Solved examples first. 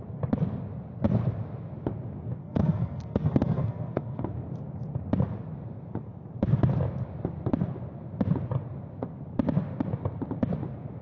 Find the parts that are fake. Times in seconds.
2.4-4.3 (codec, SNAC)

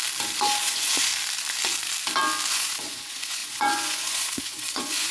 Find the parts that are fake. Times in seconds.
0.6-1.1 (vocoder, Vocos); 2.5-5.1

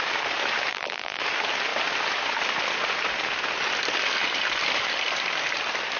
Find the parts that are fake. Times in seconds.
0.7-1.2 (vocoder, BigVGAN v2)

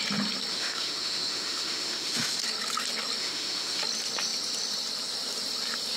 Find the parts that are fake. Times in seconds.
0.5-2.4 (autoencoder, DAC-VAE); 3.2-3.8

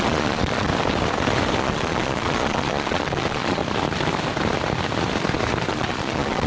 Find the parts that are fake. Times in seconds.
0.0-0.7 (vocoder, Vocos); 1.6-3.6; 5.7-6.5

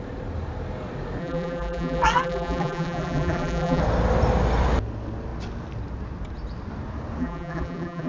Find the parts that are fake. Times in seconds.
1.2-3.8 (vocoder, BigVGAN v2); 7.2-8.1

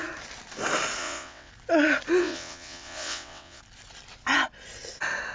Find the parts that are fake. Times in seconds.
1.0-1.5 (vocoder, WaveNeXt); 2.2-3.6

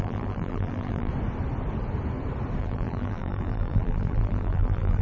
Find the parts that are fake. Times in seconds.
0.0-1.1 (vocoder, BigVGAN v2); 2.6-5.0